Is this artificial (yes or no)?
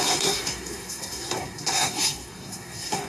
yes